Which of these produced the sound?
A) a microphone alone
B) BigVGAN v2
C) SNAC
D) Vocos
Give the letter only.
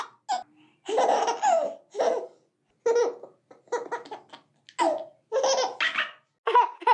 A